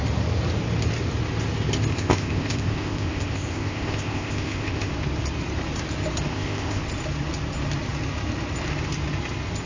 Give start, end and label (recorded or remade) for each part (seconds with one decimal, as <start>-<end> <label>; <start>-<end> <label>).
0.0-1.9 recorded; 1.9-4.9 remade; 4.9-6.3 recorded; 6.3-6.8 remade; 6.8-9.7 recorded